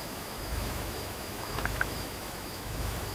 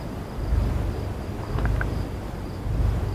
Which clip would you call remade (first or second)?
first